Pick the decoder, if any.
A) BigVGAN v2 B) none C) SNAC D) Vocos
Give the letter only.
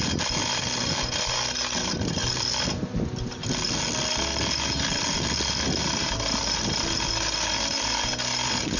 B